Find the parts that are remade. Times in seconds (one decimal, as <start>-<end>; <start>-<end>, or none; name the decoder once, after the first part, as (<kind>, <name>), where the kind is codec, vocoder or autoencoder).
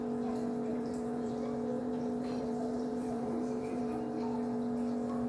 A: 0.7-1.3 (vocoder, BigVGAN v2); 1.8-3.8